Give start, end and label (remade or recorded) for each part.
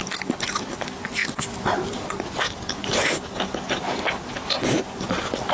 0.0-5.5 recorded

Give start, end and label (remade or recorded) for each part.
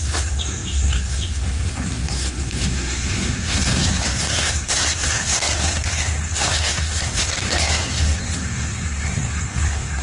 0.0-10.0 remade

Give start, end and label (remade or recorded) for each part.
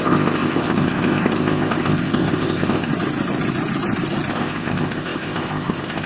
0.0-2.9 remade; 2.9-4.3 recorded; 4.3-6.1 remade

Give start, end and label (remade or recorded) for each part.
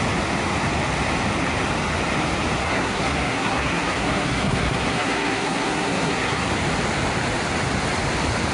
0.0-2.6 recorded; 2.6-6.5 remade; 6.5-8.5 recorded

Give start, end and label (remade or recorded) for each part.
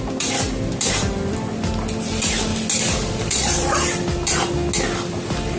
0.0-5.6 recorded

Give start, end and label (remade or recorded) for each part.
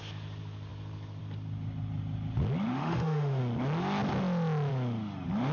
0.0-2.7 recorded; 2.7-3.4 remade; 3.4-5.5 recorded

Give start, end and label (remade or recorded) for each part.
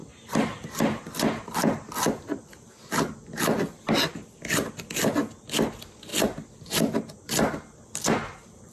0.0-3.1 remade; 3.1-8.7 recorded